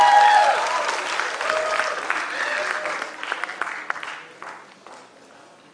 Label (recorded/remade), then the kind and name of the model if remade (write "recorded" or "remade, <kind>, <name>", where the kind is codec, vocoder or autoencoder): recorded